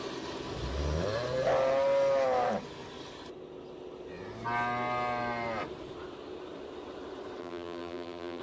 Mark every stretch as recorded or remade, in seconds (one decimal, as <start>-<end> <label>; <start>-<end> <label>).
0.0-7.4 recorded; 7.4-8.4 remade